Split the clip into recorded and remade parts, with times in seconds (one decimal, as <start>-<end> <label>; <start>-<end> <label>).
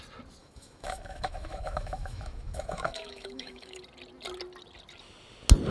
0.0-0.4 recorded; 0.4-3.8 remade; 3.8-5.7 recorded